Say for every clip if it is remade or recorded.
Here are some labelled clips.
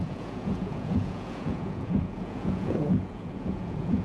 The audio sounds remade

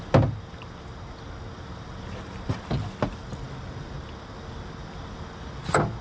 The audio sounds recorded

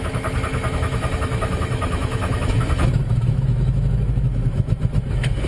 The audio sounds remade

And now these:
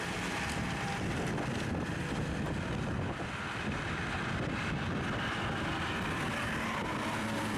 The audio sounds recorded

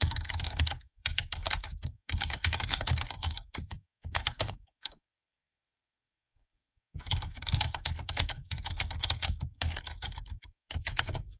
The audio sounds remade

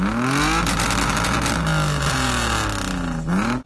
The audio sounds recorded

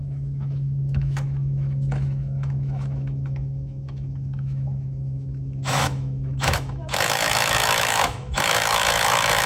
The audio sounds remade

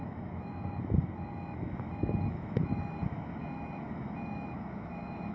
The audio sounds remade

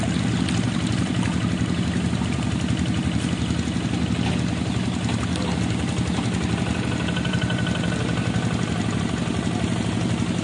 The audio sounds recorded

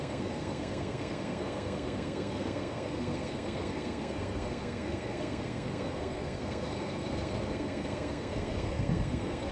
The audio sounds remade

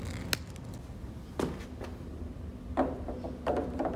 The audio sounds recorded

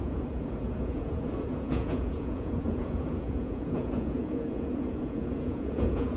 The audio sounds remade